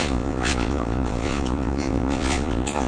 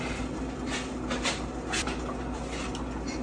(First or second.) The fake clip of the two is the first